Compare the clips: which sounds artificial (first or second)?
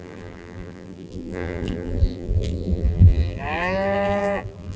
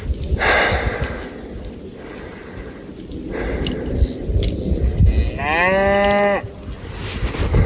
first